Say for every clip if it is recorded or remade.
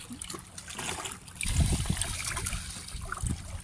recorded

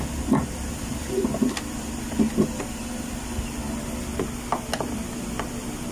recorded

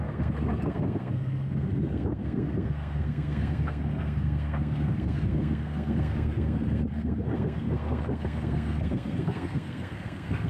remade